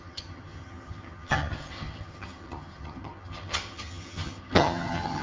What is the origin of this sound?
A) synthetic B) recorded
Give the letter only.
A